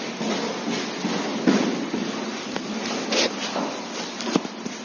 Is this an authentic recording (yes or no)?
yes